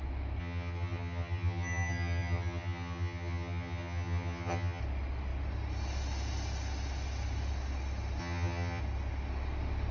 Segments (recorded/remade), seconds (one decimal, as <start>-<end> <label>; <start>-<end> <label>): 0.0-0.4 recorded; 0.4-4.8 remade; 4.8-8.2 recorded; 8.2-8.8 remade; 8.8-9.9 recorded